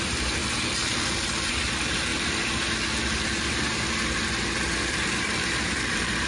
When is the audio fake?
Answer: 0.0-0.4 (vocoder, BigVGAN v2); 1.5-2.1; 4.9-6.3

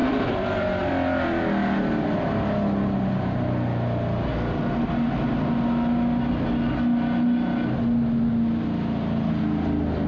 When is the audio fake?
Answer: 0.0-0.9 (vocoder, BigVGAN v2)

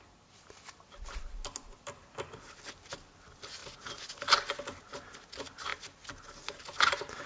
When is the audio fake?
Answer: none

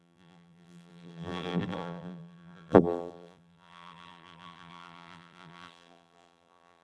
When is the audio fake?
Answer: 0.0-6.8 (vocoder, BigVGAN v2)

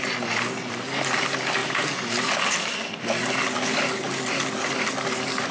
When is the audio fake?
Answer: none

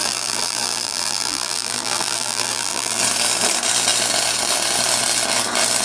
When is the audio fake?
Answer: 0.0-3.0 (vocoder, BigVGAN v2)

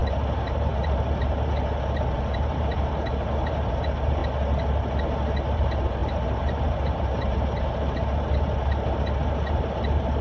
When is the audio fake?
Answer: 0.0-4.2 (vocoder, BigVGAN v2); 5.5-10.2